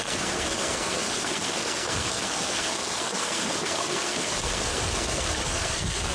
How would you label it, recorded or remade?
remade